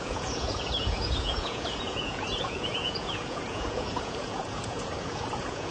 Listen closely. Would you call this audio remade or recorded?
remade